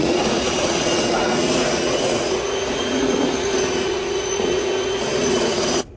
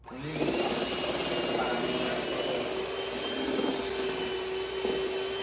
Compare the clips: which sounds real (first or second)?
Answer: second